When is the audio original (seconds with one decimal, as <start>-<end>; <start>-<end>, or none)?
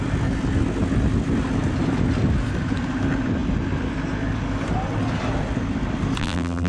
0.0-6.2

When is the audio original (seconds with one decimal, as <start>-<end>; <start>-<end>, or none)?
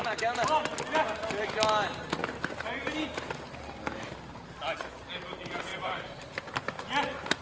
0.0-2.2; 4.6-5.7; 6.5-7.4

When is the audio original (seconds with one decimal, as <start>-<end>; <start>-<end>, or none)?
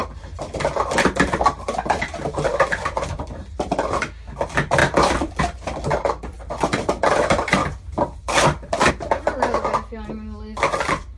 0.0-7.6; 8.9-11.2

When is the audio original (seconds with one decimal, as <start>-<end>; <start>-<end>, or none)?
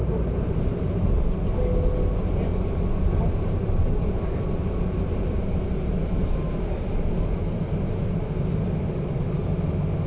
1.6-2.5; 6.5-10.1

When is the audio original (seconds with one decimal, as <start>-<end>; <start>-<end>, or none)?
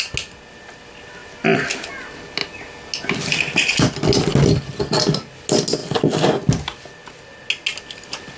0.0-1.2; 1.8-8.4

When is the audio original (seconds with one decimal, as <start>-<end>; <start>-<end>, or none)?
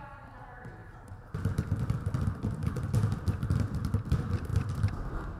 0.8-1.4